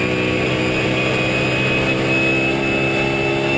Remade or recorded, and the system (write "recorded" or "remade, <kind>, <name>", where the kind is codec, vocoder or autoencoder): recorded